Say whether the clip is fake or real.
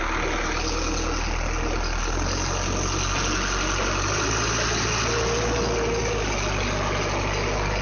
real